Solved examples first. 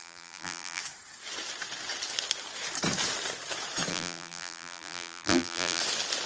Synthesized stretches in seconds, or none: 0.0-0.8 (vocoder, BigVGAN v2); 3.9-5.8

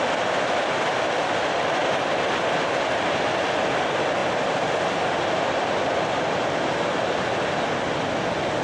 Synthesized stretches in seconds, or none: 0.0-4.2 (vocoder, BigVGAN v2); 5.1-8.6

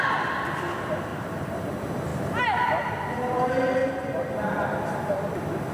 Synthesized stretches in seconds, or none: 1.1-1.7 (vocoder, BigVGAN v2); 2.1-2.9; 3.8-4.3

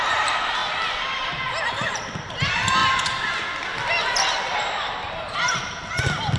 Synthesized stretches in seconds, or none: 0.0-0.6 (vocoder, BigVGAN v2); 1.1-2.8; 4.6-6.4

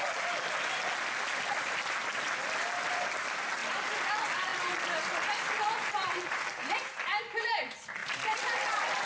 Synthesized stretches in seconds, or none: 3.6-4.1 (vocoder, BigVGAN v2); 8.0-9.1

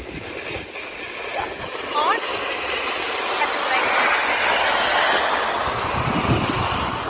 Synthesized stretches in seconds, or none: none